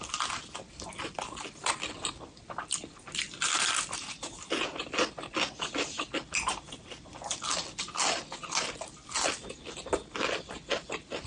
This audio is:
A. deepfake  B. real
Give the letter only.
B